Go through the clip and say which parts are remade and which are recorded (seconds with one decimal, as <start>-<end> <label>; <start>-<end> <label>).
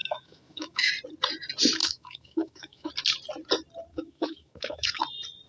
0.0-0.9 remade; 0.9-1.8 recorded; 1.8-2.9 remade; 2.9-3.9 recorded; 3.9-5.0 remade; 5.0-5.5 recorded